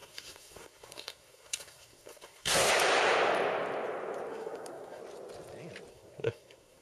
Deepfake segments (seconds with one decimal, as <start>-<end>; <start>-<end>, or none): 0.0-2.7; 4.3-5.0; 5.9-6.8